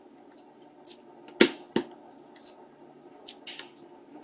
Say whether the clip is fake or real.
real